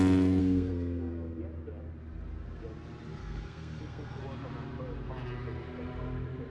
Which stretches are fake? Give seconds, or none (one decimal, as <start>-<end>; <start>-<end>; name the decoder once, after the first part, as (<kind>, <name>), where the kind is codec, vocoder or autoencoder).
0.4-1.4 (codec, SNAC); 3.2-4.2